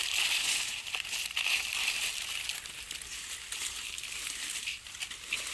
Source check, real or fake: real